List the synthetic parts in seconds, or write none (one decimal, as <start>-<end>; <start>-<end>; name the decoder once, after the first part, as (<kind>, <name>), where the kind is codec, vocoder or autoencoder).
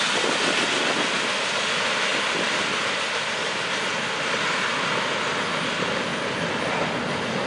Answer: none